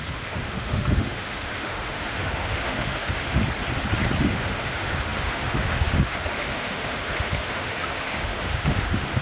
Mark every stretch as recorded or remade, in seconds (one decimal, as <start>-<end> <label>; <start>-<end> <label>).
0.0-3.4 remade; 3.4-4.2 recorded; 4.2-9.2 remade